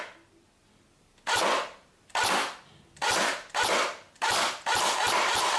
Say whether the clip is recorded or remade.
recorded